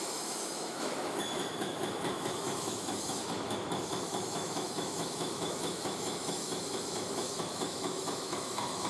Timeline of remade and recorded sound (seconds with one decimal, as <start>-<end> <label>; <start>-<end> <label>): 0.0-8.9 remade